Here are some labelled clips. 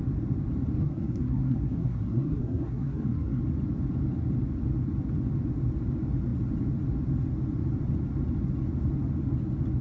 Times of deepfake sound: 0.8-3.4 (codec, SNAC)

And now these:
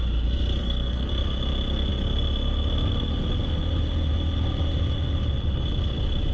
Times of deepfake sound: 0.6-1.1 (codec, SNAC)